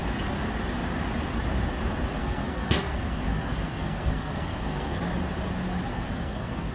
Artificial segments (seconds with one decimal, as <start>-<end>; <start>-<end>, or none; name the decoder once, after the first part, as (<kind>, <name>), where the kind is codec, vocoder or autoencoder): 2.2-5.0 (codec, SNAC); 5.9-6.7